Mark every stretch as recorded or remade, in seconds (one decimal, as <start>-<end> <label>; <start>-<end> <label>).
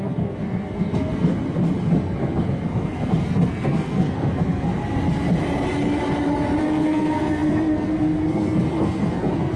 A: 0.0-1.3 remade; 1.3-1.9 recorded; 1.9-4.7 remade; 4.7-6.6 recorded; 6.6-9.6 remade